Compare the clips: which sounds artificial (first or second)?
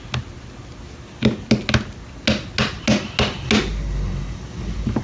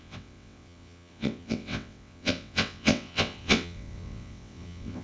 second